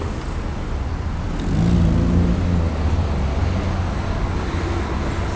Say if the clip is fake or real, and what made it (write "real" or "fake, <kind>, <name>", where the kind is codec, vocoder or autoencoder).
real